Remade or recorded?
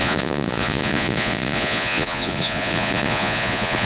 remade